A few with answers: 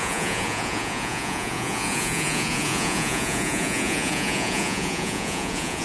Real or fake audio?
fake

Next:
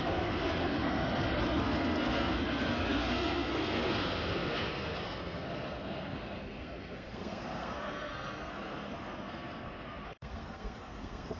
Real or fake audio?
fake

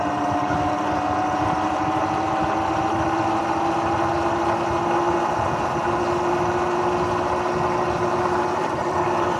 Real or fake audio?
real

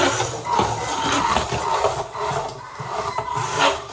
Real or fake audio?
real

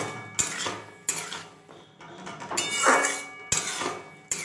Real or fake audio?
real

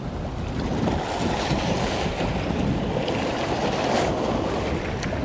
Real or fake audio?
real